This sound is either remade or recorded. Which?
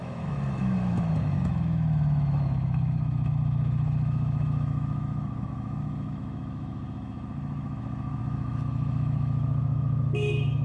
remade